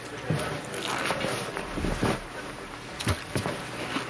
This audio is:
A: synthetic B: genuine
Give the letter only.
B